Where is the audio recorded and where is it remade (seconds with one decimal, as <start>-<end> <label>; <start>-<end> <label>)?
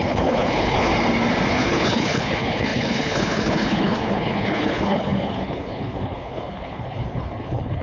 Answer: 0.0-0.9 remade; 0.9-1.5 recorded; 1.5-7.8 remade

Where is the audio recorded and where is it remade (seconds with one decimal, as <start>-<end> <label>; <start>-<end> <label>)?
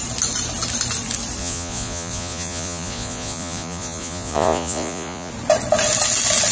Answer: 0.0-1.4 recorded; 1.4-5.3 remade; 5.3-6.5 recorded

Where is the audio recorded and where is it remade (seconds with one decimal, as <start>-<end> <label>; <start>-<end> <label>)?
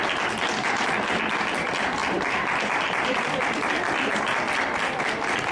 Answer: 0.0-2.0 recorded; 2.0-3.6 remade; 3.6-4.1 recorded; 4.1-5.0 remade; 5.0-5.5 recorded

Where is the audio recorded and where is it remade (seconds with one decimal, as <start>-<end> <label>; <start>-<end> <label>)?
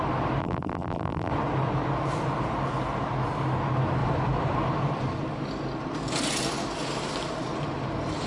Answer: 0.0-0.4 recorded; 0.4-1.3 remade; 1.3-8.3 recorded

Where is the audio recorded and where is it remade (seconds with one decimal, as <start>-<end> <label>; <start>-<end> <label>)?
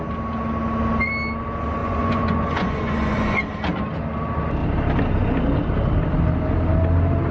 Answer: 0.0-1.8 recorded; 1.8-3.4 remade; 3.4-7.3 recorded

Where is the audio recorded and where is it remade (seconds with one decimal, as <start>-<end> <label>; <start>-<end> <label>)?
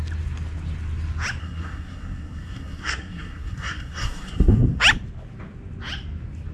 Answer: 0.0-1.4 recorded; 1.4-4.8 remade; 4.8-6.5 recorded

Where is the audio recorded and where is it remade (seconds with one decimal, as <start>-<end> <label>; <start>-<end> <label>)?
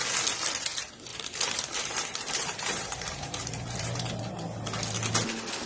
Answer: 0.0-1.1 recorded; 1.1-4.3 remade; 4.3-5.7 recorded